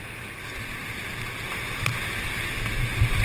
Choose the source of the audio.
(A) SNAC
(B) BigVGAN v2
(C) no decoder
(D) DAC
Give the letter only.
C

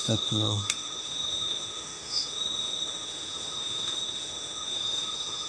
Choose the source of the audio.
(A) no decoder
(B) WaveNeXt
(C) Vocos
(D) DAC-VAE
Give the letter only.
D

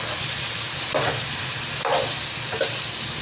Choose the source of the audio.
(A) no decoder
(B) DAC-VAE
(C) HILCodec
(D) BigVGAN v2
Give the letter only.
D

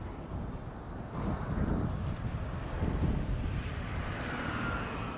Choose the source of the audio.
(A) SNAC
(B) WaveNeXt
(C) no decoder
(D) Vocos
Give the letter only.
C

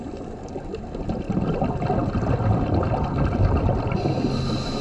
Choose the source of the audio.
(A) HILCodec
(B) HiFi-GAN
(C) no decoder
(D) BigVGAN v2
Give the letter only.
C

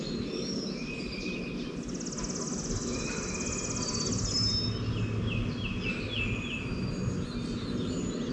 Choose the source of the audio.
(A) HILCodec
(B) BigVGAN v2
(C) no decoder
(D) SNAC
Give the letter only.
C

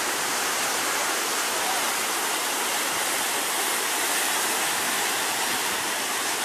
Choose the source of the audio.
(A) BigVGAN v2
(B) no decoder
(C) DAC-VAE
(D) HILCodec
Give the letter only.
A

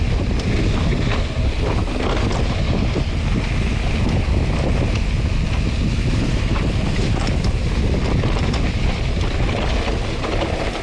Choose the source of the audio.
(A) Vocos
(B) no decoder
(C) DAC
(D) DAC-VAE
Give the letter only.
B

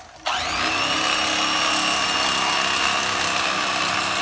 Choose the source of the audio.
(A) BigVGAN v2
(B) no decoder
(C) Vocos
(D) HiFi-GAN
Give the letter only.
B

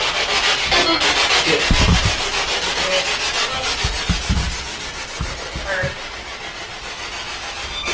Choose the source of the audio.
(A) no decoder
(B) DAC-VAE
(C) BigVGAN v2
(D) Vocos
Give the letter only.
A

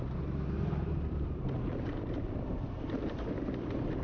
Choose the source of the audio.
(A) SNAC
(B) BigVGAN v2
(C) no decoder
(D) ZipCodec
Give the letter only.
B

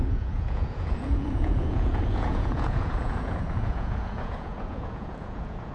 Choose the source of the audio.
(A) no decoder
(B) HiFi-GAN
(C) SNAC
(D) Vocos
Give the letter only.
D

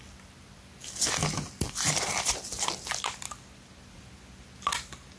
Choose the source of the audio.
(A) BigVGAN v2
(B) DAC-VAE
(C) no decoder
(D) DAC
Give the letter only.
C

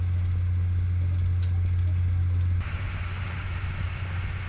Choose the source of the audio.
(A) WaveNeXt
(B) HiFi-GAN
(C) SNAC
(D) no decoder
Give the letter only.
D